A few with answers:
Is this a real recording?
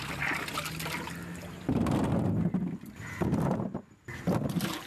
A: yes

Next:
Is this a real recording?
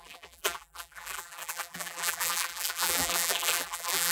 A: no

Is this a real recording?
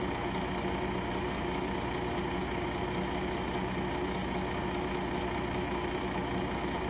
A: yes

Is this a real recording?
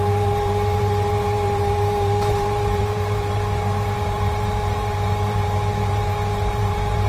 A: no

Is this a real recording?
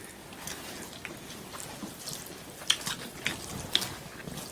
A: yes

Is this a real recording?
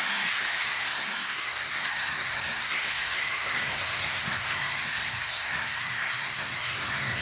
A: no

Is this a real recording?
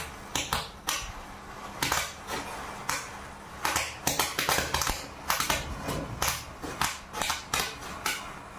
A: yes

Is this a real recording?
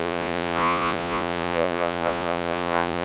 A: no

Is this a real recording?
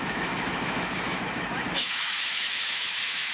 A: no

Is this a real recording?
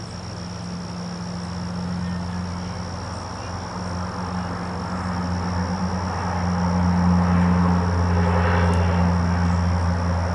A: yes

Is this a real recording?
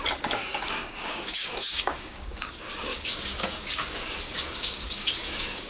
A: no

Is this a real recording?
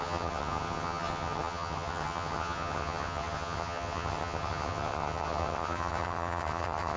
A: no